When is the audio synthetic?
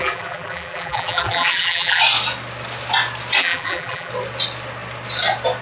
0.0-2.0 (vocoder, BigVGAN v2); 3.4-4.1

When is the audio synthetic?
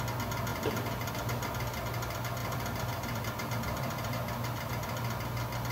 0.5-1.1 (vocoder, BigVGAN v2); 2.4-4.7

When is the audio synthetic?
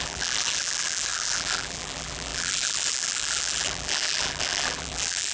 0.0-5.3 (vocoder, BigVGAN v2)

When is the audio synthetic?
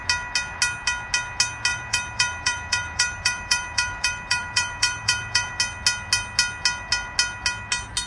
1.7-5.6 (vocoder, BigVGAN v2)